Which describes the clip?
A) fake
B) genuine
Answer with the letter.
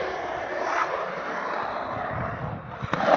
B